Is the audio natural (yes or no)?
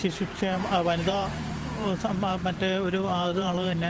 no